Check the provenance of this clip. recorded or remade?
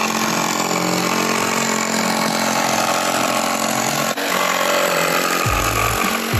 recorded